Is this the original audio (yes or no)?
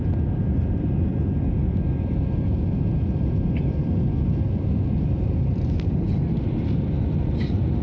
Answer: yes